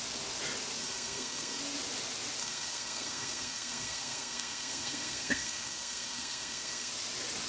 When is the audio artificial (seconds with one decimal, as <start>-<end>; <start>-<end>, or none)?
0.8-1.6; 2.4-6.9